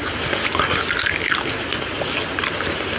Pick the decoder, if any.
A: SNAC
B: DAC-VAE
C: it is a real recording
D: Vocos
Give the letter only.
C